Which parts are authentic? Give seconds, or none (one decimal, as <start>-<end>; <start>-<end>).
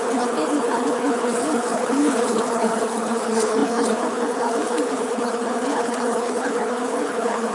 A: none